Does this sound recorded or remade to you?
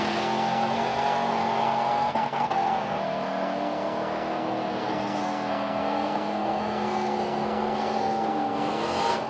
remade